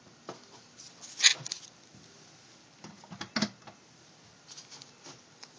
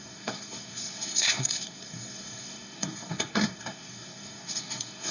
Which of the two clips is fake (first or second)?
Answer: second